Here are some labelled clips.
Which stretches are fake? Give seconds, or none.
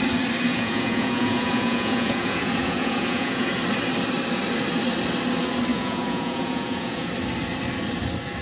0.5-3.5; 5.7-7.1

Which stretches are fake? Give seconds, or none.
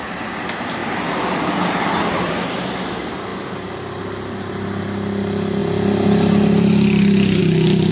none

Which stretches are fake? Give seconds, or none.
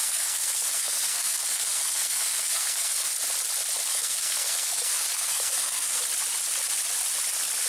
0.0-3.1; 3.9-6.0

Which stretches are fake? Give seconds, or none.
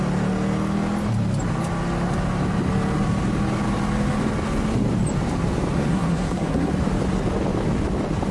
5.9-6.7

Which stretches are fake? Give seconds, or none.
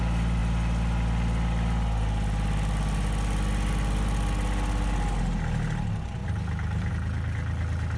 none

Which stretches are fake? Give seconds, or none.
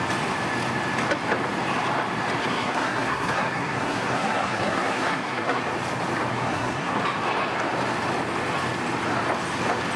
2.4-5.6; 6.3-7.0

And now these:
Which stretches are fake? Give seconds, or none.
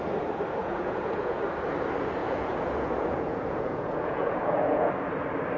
0.6-1.4; 2.2-4.9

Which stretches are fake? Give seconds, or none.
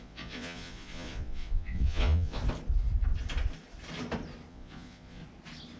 0.0-2.4; 4.5-5.2